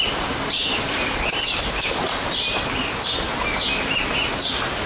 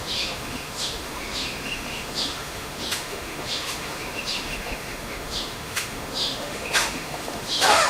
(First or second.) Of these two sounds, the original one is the first